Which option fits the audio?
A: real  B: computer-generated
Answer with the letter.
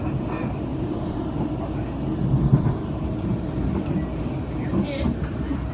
A